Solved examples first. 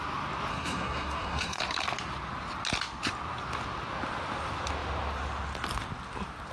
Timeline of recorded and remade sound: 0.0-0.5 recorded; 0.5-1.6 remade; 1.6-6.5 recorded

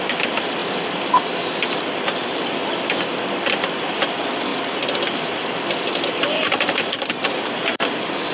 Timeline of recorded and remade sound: 0.0-8.3 recorded

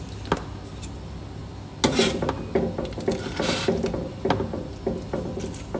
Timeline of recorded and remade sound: 0.0-5.8 recorded

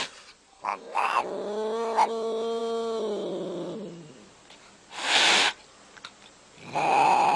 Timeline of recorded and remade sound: 0.0-0.5 recorded; 0.5-1.2 remade; 1.2-7.4 recorded

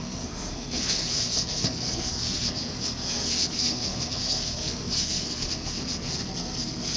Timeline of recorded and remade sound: 0.0-7.0 remade

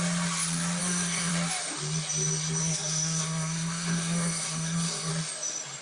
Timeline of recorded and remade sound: 0.0-0.8 recorded; 0.8-1.3 remade; 1.3-2.6 recorded; 2.6-5.1 remade; 5.1-5.8 recorded

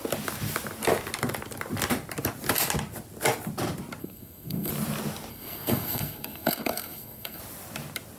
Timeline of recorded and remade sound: 0.0-4.0 recorded; 4.0-4.7 remade; 4.7-5.3 recorded; 5.3-7.4 remade; 7.4-8.2 recorded

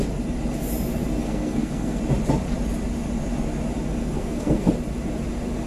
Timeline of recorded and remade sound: 0.0-1.2 recorded; 1.2-2.0 remade; 2.0-4.0 recorded; 4.0-4.7 remade; 4.7-5.7 recorded